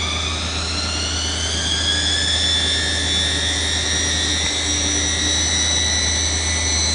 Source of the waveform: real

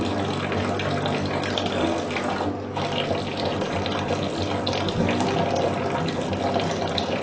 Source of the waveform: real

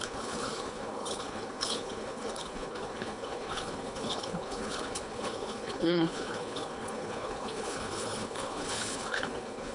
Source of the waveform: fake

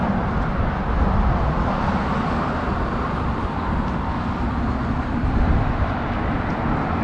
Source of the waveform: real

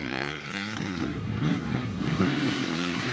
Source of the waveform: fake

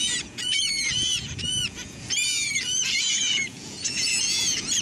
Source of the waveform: fake